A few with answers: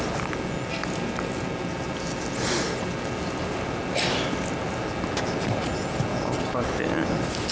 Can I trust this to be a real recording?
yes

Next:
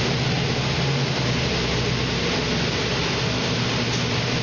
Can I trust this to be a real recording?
yes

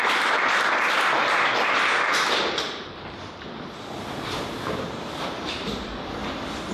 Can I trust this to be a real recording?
no